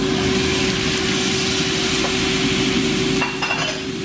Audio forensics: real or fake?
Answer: real